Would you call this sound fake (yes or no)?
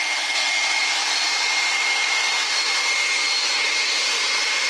yes